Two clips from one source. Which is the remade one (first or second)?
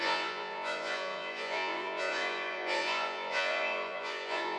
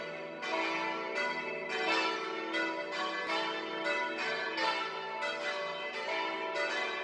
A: first